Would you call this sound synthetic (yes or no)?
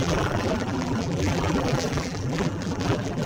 yes